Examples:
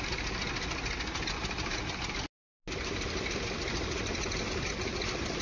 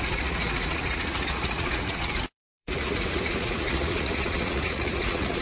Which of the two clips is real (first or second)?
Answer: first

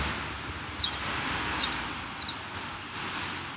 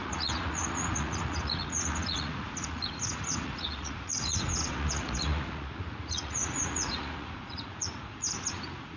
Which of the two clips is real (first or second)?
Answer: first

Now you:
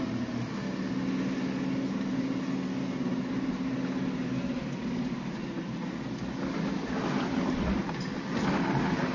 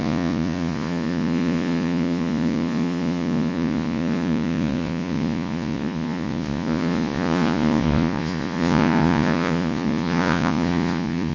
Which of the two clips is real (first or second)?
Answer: first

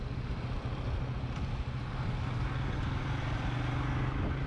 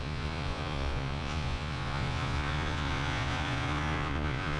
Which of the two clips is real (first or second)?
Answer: first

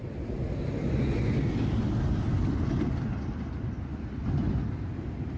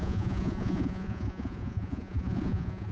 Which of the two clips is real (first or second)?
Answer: first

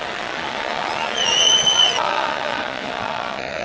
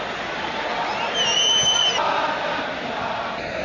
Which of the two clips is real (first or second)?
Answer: second